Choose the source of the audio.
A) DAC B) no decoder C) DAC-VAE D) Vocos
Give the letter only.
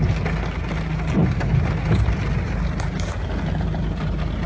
B